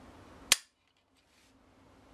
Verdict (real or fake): real